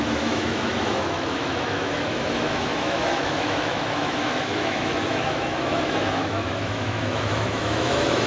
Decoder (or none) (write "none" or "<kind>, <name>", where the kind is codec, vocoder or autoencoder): autoencoder, DAC-VAE